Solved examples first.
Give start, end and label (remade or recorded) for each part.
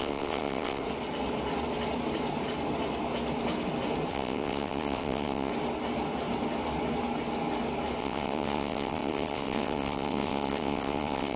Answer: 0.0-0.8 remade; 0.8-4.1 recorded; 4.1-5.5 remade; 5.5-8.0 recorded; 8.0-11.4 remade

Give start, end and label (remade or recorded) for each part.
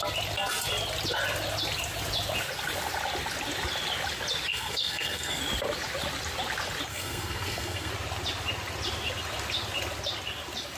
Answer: 0.0-4.5 recorded; 4.5-5.4 remade; 5.4-6.9 recorded; 6.9-7.9 remade; 7.9-10.8 recorded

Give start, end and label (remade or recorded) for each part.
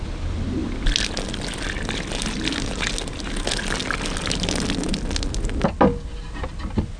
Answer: 0.0-7.0 recorded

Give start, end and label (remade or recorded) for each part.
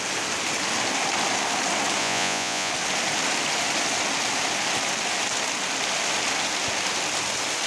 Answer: 0.0-2.0 recorded; 2.0-2.7 remade; 2.7-7.7 recorded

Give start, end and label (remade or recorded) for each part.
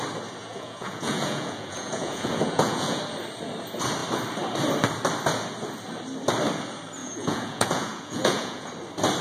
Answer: 0.0-0.4 recorded; 0.4-3.0 remade; 3.0-7.0 recorded; 7.0-8.7 remade; 8.7-9.2 recorded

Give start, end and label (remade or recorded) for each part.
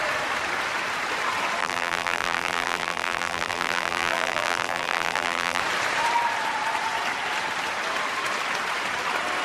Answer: 0.0-1.6 recorded; 1.6-5.6 remade; 5.6-9.4 recorded